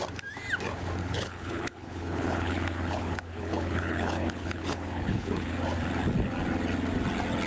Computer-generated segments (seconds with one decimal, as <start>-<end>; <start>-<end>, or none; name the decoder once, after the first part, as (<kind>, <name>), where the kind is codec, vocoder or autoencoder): 1.0-5.5 (codec, HILCodec)